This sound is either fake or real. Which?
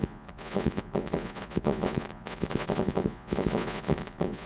fake